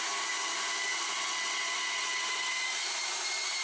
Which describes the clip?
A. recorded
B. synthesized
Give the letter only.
A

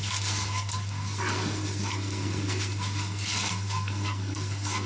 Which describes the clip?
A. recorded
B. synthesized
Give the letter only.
B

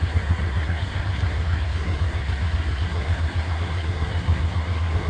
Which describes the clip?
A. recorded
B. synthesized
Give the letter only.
B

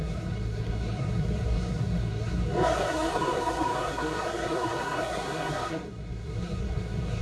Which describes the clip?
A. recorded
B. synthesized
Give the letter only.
B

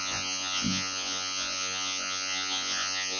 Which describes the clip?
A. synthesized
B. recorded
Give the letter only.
A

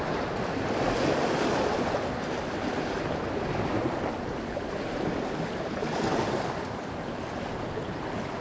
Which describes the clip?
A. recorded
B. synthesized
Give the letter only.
A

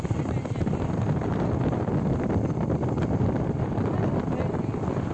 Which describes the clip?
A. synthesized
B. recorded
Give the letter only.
B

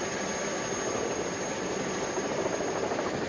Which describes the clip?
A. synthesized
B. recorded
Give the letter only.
B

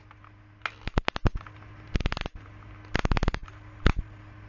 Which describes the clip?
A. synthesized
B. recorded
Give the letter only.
B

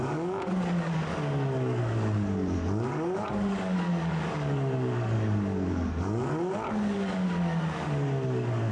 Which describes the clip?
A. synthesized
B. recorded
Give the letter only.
A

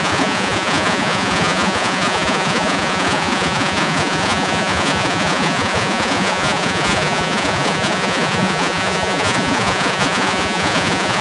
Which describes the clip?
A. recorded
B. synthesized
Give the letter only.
B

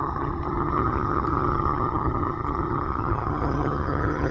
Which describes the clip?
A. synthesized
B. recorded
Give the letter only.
A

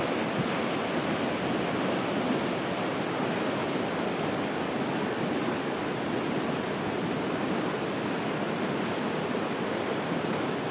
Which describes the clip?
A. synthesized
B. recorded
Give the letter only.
B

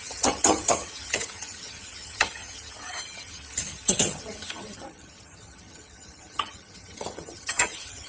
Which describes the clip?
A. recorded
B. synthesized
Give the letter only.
B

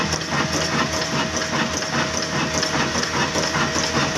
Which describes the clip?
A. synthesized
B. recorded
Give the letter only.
B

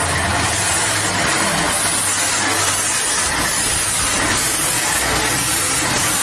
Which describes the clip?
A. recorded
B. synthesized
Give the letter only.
A